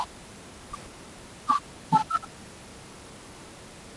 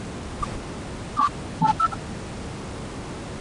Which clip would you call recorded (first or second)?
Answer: second